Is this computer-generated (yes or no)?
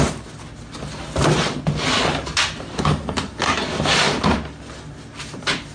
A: no